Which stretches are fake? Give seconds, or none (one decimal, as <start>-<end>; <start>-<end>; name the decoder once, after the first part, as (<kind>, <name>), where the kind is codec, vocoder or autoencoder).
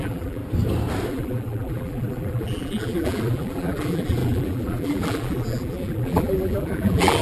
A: 0.0-0.4 (vocoder, BigVGAN v2); 1.1-7.2